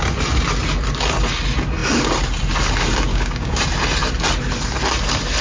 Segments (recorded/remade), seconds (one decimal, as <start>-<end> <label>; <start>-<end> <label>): 0.0-3.1 recorded; 3.1-3.6 remade; 3.6-5.4 recorded